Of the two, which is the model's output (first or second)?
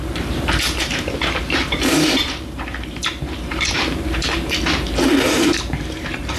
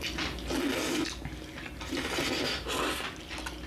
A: first